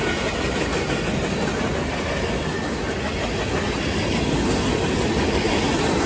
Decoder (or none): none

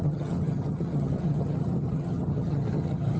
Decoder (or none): vocoder, HiFi-GAN